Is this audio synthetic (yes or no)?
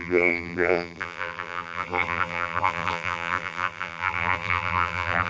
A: yes